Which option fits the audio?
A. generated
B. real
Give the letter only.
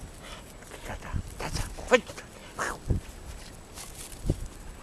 B